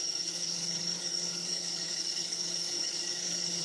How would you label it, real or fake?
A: fake